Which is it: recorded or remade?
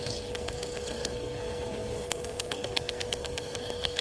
remade